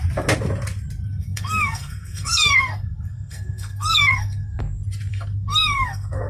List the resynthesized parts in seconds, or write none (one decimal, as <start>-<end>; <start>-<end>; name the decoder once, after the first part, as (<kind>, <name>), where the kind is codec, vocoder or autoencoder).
1.2-4.6 (codec, SNAC); 5.1-6.3